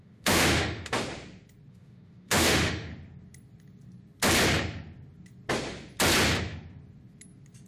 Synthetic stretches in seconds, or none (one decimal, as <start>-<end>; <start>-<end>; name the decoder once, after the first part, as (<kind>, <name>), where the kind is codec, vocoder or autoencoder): 0.0-1.0 (autoencoder, DAC-VAE); 1.7-2.9